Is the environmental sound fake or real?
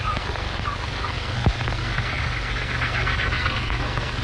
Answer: fake